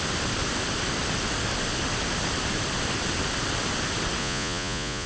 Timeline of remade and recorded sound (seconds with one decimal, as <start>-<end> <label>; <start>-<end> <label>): 0.0-4.2 recorded; 4.2-5.1 remade